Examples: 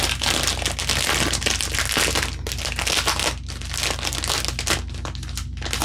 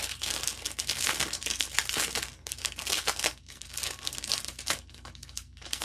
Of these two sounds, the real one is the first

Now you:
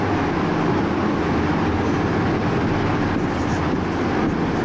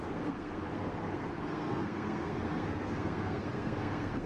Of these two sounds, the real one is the first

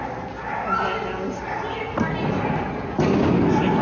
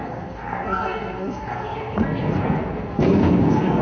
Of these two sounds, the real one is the first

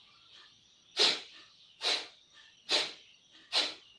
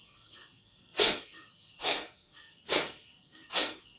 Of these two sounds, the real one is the first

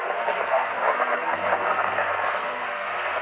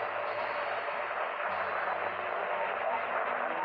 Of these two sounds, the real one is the second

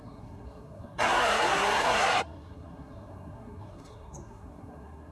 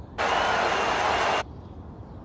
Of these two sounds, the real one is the second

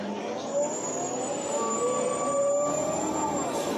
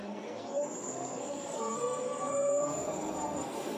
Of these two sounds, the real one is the first